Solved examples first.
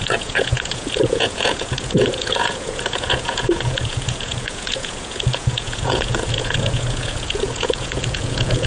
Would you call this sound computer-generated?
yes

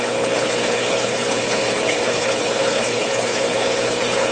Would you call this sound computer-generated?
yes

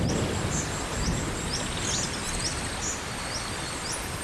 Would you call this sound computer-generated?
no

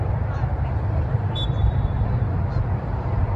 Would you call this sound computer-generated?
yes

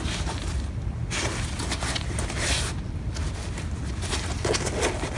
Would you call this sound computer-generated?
no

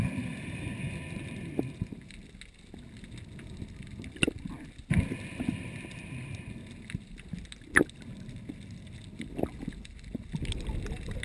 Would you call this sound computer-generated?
no